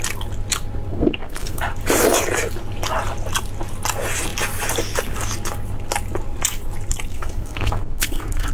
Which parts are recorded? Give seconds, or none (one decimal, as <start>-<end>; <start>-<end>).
0.0-0.9; 1.6-7.1